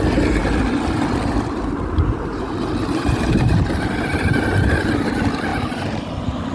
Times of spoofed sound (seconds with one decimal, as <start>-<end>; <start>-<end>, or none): none